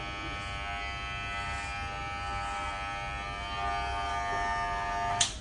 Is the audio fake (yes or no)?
no